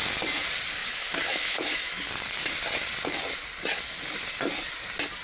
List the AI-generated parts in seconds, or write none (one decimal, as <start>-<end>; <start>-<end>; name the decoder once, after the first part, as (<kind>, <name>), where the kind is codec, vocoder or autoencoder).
0.8-1.9 (autoencoder, DAC-VAE)